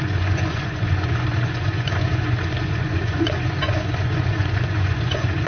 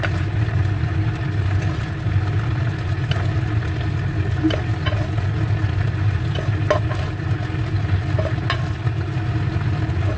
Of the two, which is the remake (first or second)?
first